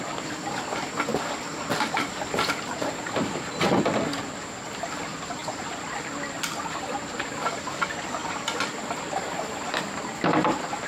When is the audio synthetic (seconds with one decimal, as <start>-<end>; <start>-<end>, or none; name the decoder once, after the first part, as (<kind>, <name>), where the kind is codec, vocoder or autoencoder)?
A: 1.1-4.2 (vocoder, BigVGAN v2)